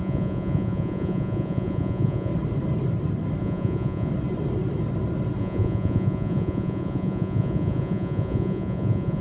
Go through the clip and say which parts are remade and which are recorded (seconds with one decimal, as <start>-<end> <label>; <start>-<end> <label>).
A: 0.0-2.3 remade; 2.3-3.4 recorded; 3.4-4.1 remade; 4.1-5.4 recorded; 5.4-9.2 remade